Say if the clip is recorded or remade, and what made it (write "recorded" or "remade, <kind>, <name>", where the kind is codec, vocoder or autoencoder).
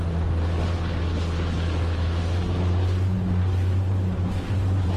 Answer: recorded